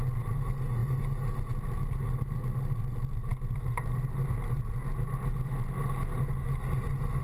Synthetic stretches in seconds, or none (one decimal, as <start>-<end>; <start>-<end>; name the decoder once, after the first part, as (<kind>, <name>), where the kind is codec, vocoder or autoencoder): none